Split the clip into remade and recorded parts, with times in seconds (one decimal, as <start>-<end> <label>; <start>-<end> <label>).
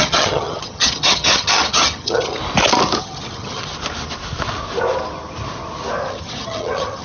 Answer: 0.0-2.4 remade; 2.4-3.0 recorded; 3.0-3.7 remade; 3.7-6.1 recorded; 6.1-7.0 remade